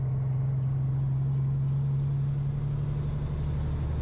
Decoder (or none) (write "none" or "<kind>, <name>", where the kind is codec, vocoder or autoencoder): none